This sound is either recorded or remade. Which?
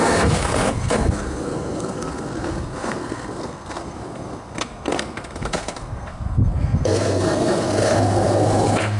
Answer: remade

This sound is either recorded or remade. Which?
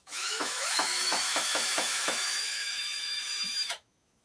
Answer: remade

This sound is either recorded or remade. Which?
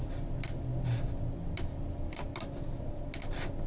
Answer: recorded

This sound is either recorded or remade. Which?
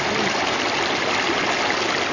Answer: recorded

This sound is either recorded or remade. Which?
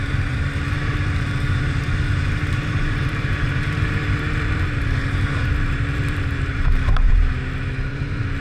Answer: remade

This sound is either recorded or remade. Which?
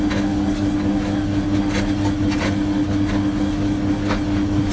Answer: recorded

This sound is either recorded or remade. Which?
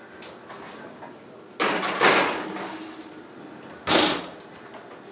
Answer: recorded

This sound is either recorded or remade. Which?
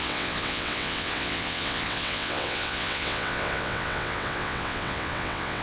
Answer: remade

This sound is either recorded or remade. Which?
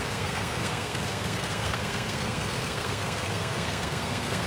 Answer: remade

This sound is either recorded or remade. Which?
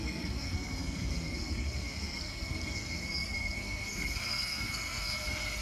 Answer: remade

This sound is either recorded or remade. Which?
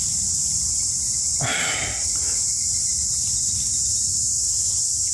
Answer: recorded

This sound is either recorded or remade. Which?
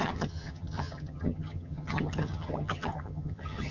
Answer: remade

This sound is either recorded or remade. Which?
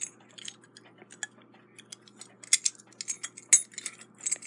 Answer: recorded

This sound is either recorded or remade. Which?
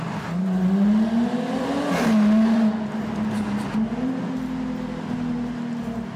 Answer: recorded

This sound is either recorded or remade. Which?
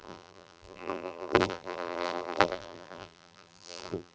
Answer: remade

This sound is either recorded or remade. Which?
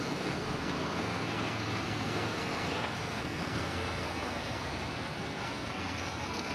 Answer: remade